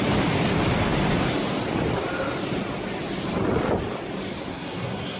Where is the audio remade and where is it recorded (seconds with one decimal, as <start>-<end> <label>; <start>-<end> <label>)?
0.0-4.5 recorded; 4.5-5.2 remade